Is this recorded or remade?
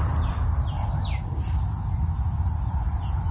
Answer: recorded